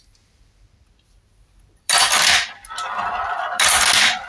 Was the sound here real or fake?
fake